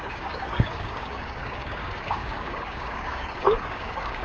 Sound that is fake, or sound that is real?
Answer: fake